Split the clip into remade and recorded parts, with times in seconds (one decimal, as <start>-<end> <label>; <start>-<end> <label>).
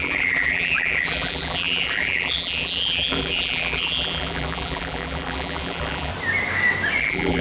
0.0-6.1 remade; 6.1-7.0 recorded; 7.0-7.4 remade